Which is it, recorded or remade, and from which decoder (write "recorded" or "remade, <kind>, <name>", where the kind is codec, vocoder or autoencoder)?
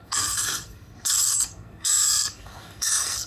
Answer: remade, codec, SNAC